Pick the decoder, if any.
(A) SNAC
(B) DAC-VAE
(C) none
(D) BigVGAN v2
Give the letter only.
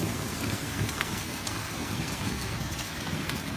A